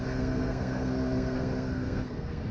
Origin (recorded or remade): remade